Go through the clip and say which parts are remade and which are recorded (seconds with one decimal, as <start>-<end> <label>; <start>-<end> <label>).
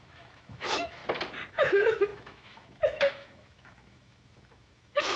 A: 0.0-1.0 remade; 1.0-1.5 recorded; 1.5-5.2 remade